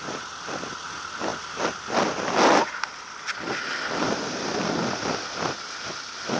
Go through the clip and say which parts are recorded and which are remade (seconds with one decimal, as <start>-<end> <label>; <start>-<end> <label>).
0.0-6.4 recorded